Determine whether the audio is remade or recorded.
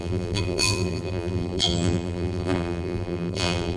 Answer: remade